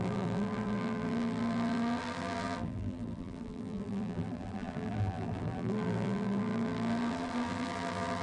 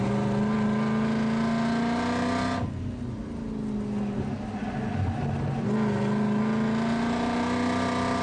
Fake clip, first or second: first